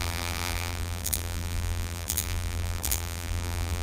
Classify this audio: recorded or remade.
remade